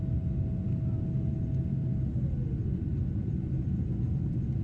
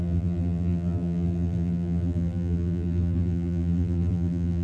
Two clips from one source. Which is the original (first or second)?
first